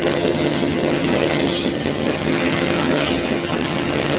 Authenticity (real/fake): fake